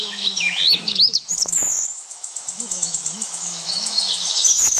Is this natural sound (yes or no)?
no